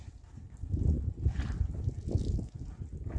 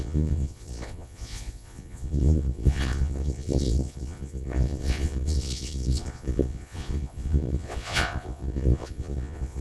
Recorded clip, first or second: first